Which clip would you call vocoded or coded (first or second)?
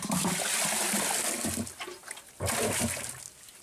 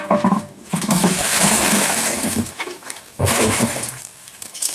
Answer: second